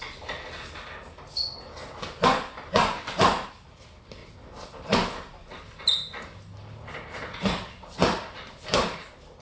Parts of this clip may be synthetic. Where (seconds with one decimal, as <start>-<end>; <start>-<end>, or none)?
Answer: none